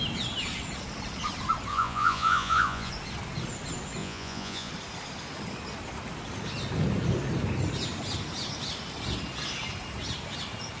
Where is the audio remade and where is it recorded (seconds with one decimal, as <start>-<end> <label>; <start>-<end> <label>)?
0.0-1.7 recorded; 1.7-2.9 remade; 2.9-4.0 recorded; 4.0-4.7 remade; 4.7-10.8 recorded